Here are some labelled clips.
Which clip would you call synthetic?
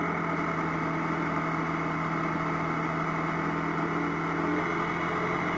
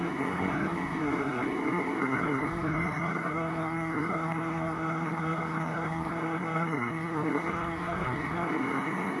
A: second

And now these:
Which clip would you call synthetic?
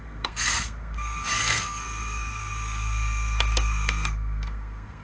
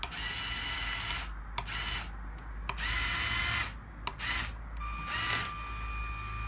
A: first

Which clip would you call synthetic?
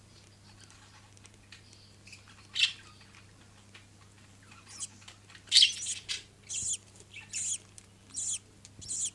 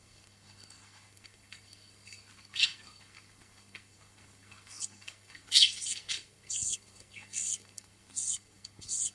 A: second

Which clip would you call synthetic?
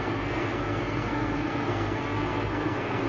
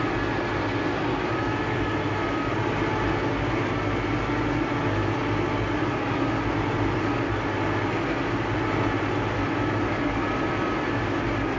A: first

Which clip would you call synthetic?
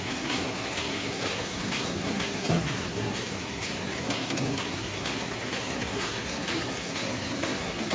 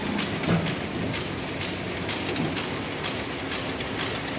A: first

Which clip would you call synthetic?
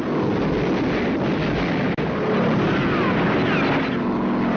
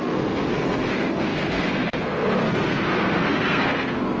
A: second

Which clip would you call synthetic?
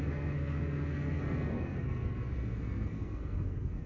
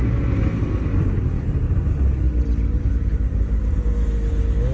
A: first